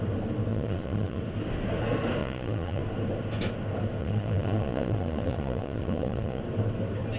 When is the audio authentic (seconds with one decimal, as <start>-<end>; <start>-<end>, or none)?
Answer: 0.0-0.5; 1.2-2.2; 2.8-4.0; 6.4-7.2